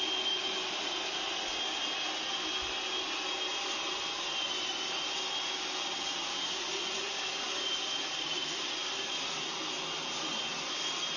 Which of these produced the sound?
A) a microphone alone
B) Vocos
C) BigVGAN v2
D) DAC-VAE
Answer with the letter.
A